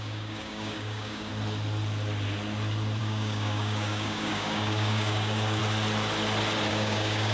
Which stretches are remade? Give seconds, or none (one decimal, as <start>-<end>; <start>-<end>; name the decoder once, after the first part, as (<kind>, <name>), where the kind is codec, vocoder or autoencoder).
0.0-1.3 (codec, DAC); 3.0-5.6; 6.7-7.3